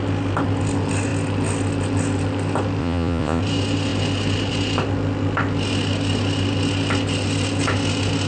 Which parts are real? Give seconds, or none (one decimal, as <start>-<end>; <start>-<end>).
0.0-2.8; 3.4-8.3